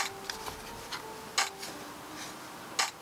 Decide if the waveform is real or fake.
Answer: real